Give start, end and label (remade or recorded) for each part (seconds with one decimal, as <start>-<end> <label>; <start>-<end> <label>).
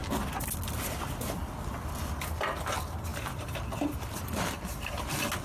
0.0-5.4 recorded